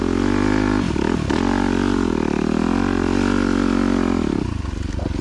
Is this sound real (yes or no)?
yes